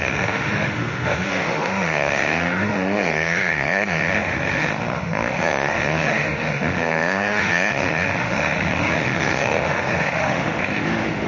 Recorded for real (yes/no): no